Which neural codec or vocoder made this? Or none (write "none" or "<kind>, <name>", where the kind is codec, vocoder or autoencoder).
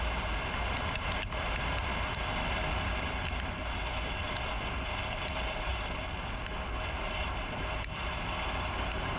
none